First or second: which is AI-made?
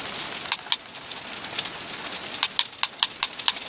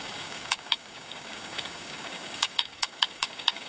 second